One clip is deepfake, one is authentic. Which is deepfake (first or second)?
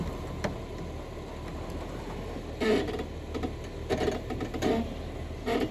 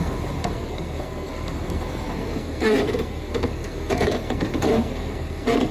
second